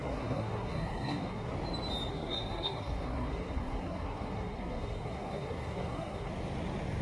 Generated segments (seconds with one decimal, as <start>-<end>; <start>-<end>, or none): 0.0-1.5; 2.1-6.3